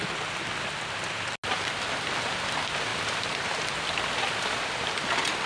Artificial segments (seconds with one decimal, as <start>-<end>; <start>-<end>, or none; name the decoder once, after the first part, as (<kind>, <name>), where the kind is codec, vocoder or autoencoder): 2.9-4.7 (vocoder, BigVGAN v2)

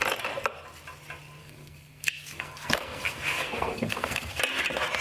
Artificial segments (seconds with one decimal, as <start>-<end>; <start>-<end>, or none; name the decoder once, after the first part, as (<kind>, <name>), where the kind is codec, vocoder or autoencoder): 1.4-4.4 (codec, SNAC)

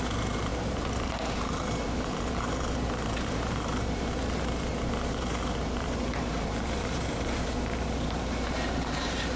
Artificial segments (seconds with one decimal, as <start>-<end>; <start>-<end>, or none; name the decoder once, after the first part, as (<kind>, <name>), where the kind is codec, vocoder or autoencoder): 0.0-9.4 (vocoder, BigVGAN v2)